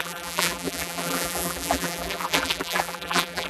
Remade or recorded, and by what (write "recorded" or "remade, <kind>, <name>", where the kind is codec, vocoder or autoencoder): remade, vocoder, BigVGAN v2